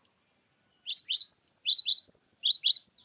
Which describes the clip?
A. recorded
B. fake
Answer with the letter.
A